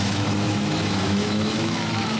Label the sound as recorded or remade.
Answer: remade